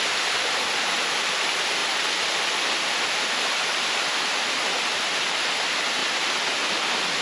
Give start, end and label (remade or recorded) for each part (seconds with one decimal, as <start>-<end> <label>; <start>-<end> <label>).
0.0-4.9 recorded; 4.9-5.5 remade; 5.5-7.2 recorded